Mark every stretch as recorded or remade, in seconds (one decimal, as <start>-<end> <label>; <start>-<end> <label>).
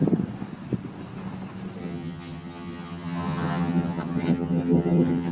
0.0-1.8 recorded; 1.8-5.3 remade